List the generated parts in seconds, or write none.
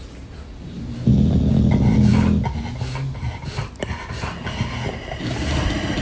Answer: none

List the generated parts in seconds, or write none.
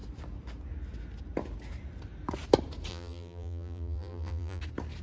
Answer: 2.9-4.6 (vocoder, BigVGAN v2)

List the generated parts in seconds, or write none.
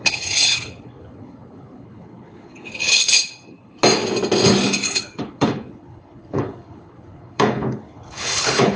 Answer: 0.0-3.8 (codec, HILCodec); 4.9-8.8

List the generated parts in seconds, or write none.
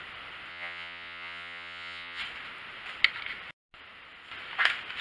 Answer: 0.5-2.2 (vocoder, Vocos)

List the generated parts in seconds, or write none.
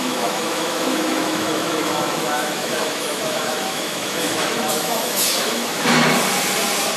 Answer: 0.0-5.7 (autoencoder, DAC-VAE)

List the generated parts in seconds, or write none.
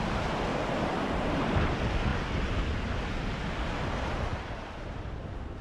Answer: 0.5-1.7 (vocoder, BigVGAN v2); 4.3-4.9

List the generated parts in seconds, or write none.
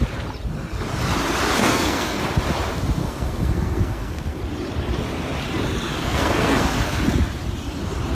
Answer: 1.6-2.2 (codec, SNAC); 3.0-4.4; 6.0-7.0